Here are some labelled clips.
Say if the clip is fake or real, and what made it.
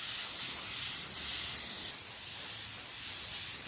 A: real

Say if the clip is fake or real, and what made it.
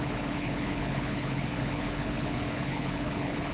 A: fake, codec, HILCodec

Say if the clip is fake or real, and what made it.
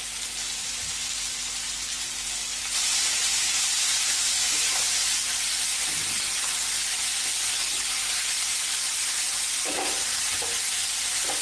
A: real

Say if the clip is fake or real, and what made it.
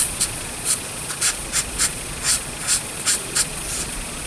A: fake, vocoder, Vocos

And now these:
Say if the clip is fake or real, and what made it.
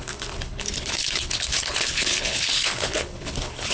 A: fake, codec, HILCodec